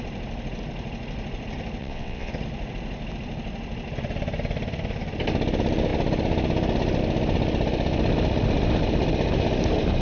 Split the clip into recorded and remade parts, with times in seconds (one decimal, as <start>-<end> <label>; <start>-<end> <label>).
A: 0.0-1.8 recorded; 1.8-2.3 remade; 2.3-10.0 recorded